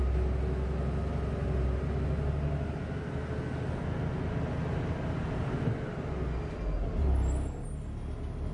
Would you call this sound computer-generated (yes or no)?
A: no